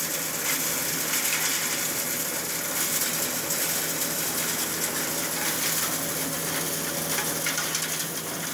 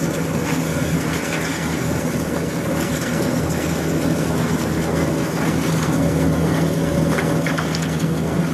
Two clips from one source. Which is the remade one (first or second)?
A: second